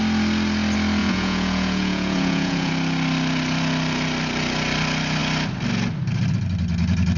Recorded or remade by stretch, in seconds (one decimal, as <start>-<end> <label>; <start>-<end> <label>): 0.0-1.0 recorded; 1.0-2.7 remade; 2.7-7.2 recorded